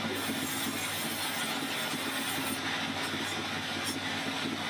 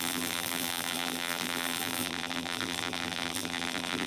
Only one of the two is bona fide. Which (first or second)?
first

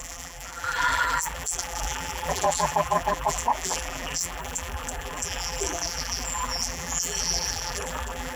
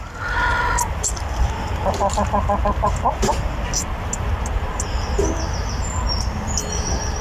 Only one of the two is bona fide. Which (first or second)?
second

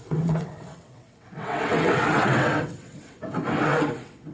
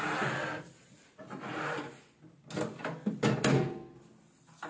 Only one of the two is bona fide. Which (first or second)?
second